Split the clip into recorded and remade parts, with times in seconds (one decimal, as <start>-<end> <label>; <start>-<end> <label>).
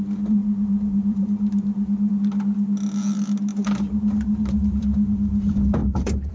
0.0-0.4 recorded; 0.4-2.1 remade; 2.1-3.5 recorded; 3.5-4.8 remade; 4.8-5.8 recorded; 5.8-6.3 remade